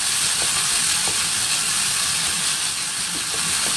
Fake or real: real